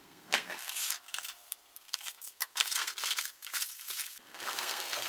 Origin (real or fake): fake